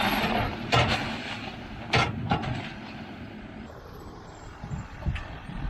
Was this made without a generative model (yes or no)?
yes